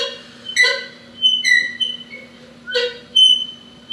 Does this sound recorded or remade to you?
recorded